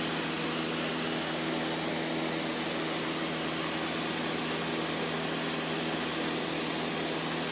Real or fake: real